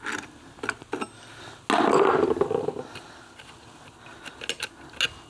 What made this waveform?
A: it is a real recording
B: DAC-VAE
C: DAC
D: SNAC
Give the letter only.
A